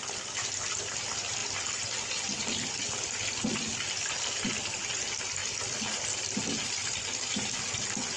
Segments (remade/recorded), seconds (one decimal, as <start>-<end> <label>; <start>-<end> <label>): 0.0-8.2 recorded